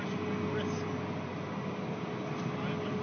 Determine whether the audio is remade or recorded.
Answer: recorded